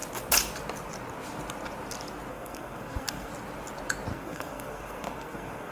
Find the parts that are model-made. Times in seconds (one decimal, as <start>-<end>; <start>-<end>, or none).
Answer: 2.3-3.3; 4.1-5.7